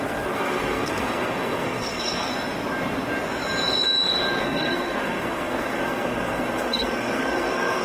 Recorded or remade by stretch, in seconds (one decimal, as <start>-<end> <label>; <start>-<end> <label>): 0.0-2.3 remade; 2.3-4.4 recorded; 4.4-7.8 remade